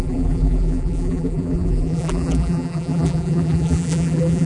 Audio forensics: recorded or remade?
remade